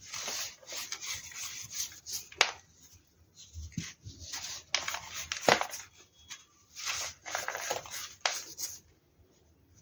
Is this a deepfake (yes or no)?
no